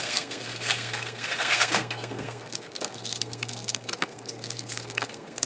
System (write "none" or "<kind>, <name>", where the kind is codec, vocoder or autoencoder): codec, SNAC